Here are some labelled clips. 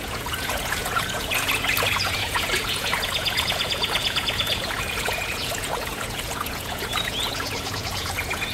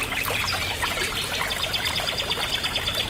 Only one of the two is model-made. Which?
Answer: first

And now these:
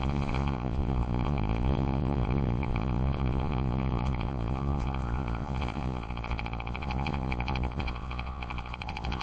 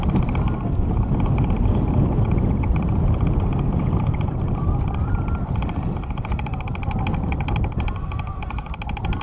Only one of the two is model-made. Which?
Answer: first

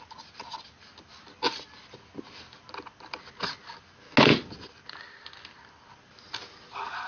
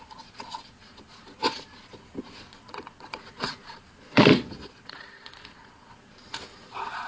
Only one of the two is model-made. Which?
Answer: second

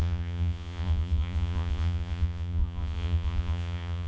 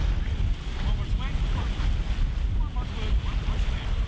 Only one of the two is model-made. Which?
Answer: first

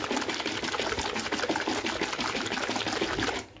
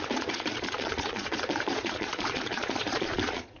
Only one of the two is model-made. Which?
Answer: second